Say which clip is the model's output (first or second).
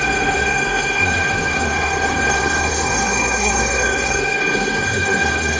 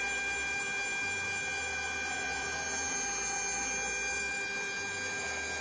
first